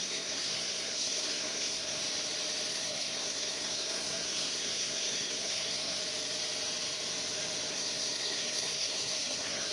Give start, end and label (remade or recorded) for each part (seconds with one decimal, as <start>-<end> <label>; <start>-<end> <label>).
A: 0.0-2.0 remade; 2.0-2.7 recorded; 2.7-6.0 remade; 6.0-7.7 recorded; 7.7-9.7 remade